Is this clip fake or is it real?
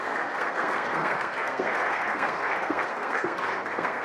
fake